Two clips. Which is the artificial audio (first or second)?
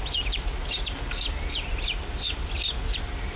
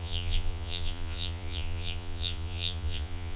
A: second